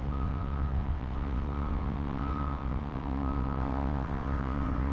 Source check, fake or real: fake